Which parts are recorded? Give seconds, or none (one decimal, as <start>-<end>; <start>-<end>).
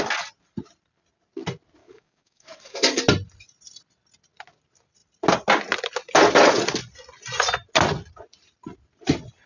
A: 0.0-1.8; 3.0-9.5